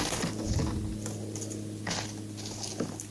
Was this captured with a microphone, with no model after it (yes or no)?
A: yes